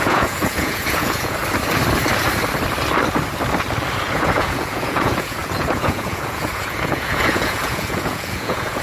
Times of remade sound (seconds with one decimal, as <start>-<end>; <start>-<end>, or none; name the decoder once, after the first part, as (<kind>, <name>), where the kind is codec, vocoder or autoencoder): 0.0-1.4 (vocoder, Vocos); 3.9-8.8